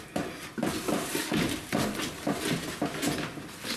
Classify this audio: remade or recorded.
recorded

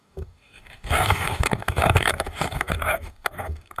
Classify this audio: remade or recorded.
remade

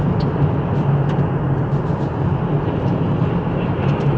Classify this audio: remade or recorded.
recorded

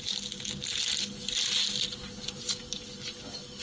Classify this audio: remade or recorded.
recorded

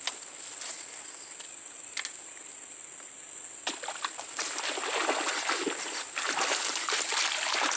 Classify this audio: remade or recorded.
recorded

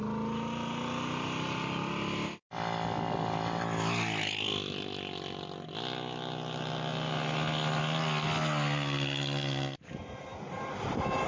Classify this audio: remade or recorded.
recorded